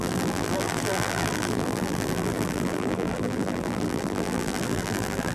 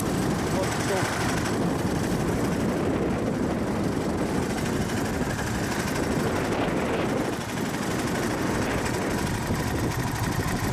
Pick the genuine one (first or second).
second